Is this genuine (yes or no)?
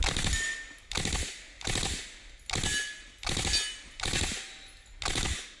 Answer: yes